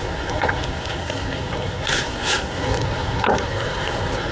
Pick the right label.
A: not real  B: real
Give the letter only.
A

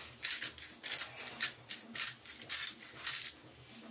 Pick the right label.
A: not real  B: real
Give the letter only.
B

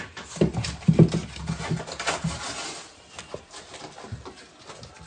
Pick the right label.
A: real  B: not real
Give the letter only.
A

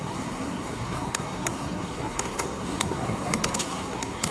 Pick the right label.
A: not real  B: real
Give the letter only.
A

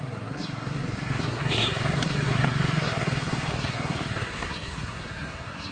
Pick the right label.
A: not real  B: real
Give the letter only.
A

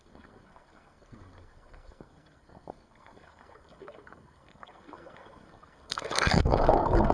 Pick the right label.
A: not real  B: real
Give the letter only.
A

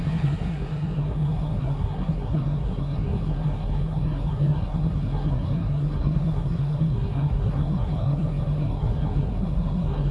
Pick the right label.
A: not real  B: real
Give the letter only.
A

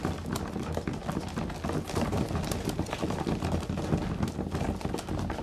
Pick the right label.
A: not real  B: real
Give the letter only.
B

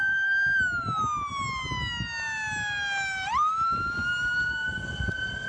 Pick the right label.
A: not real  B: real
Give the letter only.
B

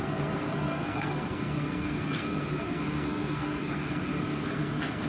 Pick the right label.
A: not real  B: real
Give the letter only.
A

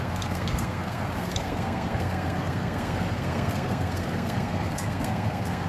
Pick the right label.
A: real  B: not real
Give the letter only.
B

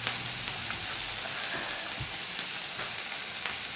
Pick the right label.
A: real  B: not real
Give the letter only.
A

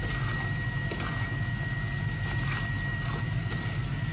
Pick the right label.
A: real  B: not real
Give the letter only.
A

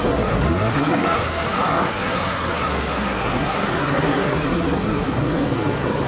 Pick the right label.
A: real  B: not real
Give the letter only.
B